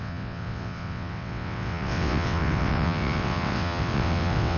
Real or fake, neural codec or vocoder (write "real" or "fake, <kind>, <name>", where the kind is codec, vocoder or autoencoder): fake, vocoder, WaveNeXt